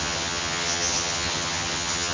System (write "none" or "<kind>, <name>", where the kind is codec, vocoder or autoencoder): vocoder, HiFi-GAN